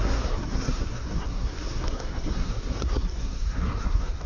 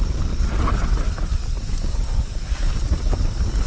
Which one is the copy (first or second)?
first